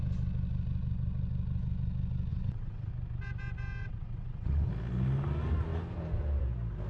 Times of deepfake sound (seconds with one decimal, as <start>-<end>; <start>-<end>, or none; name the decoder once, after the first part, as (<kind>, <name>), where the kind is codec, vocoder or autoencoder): 2.3-2.9 (vocoder, WaveNeXt); 3.8-4.7